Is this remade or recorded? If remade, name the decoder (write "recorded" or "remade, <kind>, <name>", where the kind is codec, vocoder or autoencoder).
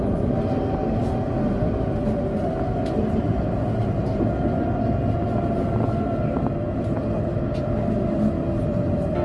recorded